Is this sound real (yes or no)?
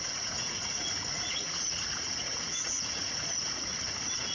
no